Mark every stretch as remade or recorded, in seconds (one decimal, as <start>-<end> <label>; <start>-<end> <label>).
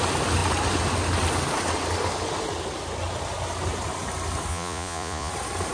0.0-4.5 recorded; 4.5-5.3 remade; 5.3-5.7 recorded